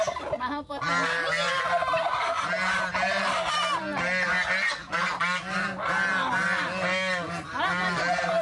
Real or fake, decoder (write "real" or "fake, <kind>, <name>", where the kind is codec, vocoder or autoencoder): real